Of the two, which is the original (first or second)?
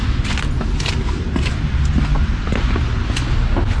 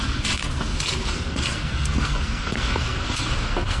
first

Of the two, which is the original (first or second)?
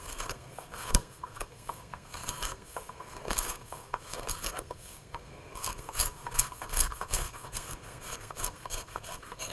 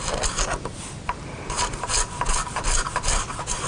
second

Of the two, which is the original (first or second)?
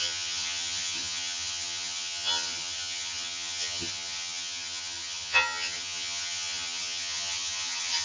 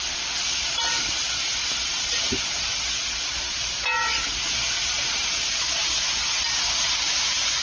second